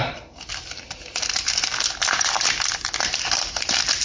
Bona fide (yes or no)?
yes